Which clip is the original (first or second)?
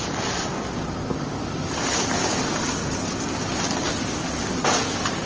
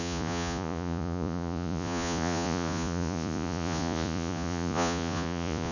first